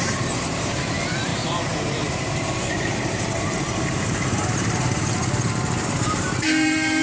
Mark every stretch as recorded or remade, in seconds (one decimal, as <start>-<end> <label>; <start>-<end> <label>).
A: 0.0-7.0 remade